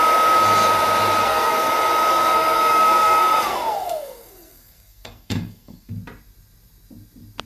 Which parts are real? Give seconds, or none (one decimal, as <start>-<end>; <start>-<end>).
0.0-1.2; 1.7-2.1; 5.9-7.5